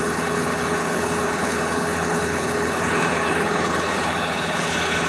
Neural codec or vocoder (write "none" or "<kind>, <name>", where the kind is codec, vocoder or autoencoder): codec, HILCodec